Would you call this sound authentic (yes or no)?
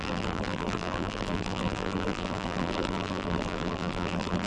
no